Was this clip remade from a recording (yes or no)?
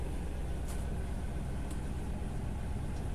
no